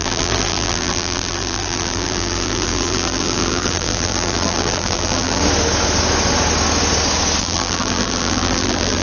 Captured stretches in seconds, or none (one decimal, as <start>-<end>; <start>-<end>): 5.4-7.4